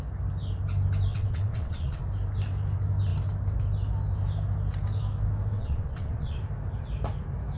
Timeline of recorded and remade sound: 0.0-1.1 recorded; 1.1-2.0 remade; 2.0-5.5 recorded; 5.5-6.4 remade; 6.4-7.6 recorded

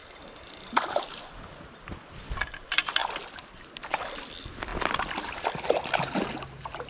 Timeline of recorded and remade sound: 0.0-6.9 recorded